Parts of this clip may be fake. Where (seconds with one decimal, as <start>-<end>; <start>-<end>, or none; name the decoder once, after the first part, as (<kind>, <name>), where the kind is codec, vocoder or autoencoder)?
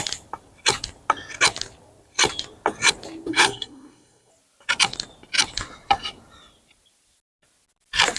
3.3-4.3 (codec, SNAC)